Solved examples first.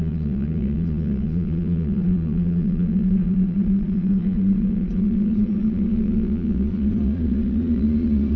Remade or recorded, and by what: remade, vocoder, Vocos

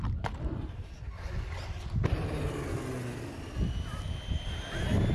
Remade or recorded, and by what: recorded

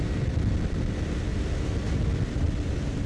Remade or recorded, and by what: recorded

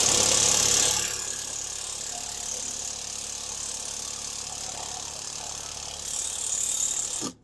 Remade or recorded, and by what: recorded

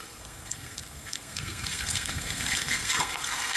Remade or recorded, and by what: remade, codec, SNAC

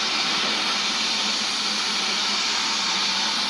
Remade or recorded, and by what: recorded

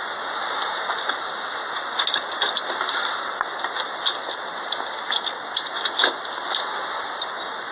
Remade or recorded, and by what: recorded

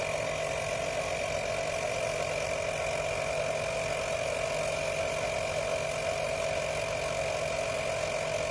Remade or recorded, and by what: recorded